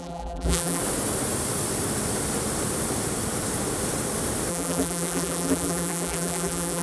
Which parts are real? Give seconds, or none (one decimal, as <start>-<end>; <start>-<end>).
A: 0.8-4.5